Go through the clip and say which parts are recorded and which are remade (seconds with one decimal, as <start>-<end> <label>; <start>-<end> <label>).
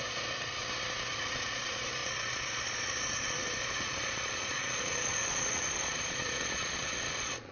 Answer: 0.0-0.6 remade; 0.6-1.1 recorded; 1.1-7.5 remade